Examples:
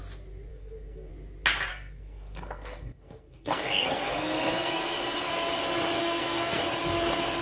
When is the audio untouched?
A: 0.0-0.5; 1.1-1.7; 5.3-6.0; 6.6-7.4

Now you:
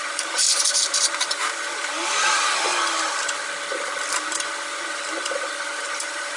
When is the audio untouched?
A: 2.7-6.0

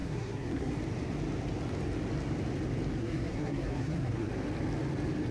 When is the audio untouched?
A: 0.7-3.0; 4.3-5.3

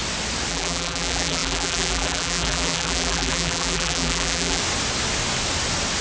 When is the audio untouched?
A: 0.0-0.5; 4.6-6.0

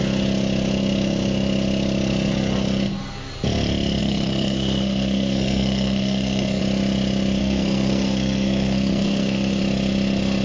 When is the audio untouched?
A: 0.0-4.0; 6.6-7.4; 9.6-10.4

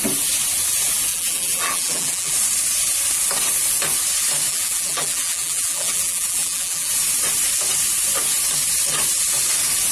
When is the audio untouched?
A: 0.0-1.1; 2.3-4.5; 6.9-9.9